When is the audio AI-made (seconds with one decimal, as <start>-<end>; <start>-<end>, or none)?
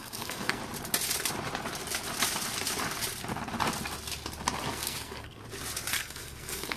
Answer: 0.0-0.6; 4.7-5.4; 5.9-6.8